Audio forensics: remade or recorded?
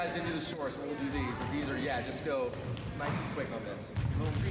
recorded